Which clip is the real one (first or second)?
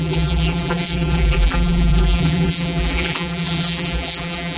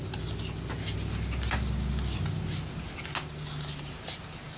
second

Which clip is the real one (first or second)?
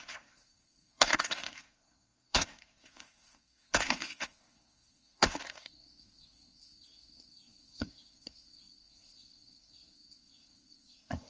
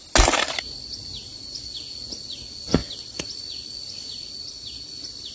second